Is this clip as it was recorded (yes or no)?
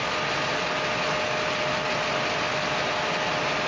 yes